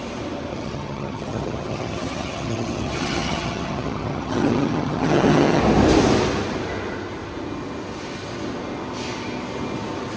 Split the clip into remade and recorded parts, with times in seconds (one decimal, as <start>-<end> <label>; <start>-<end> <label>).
0.0-0.5 recorded; 0.5-5.6 remade; 5.6-10.2 recorded